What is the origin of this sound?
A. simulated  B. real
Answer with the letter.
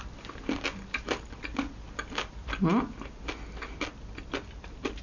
B